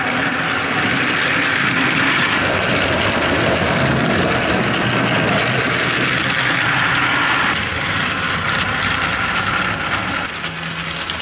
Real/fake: real